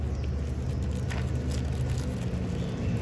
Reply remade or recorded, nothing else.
recorded